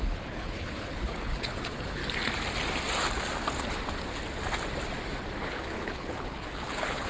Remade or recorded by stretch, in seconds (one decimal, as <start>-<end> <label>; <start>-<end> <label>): 0.0-2.0 remade; 2.0-5.4 recorded; 5.4-7.1 remade